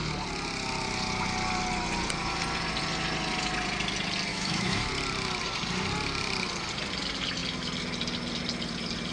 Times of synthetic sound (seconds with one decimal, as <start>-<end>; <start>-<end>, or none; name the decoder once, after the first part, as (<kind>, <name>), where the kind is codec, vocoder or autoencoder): 4.3-4.9 (autoencoder, DAC-VAE)